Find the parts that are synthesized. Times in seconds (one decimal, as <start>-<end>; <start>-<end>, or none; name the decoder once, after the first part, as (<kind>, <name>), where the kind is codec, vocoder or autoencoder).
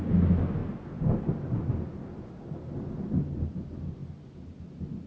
none